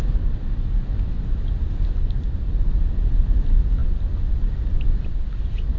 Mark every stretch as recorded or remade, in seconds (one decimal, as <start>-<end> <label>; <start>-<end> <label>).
0.0-5.8 recorded